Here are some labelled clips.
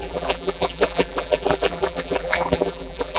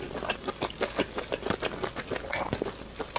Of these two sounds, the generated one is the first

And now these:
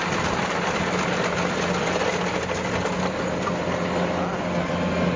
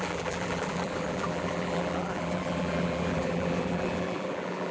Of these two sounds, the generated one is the second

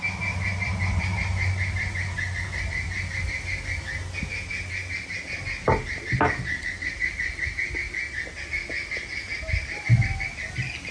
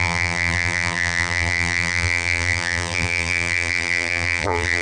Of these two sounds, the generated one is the second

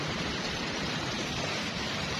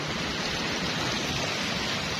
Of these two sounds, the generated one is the first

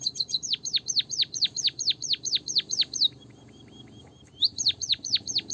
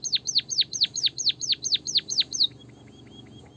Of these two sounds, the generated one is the first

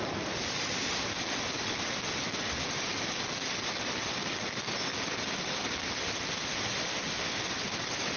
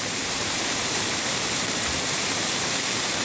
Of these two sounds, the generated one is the second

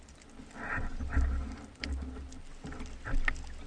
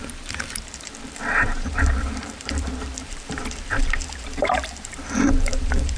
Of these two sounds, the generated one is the second